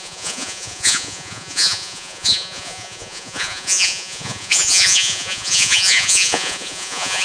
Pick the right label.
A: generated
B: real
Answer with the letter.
A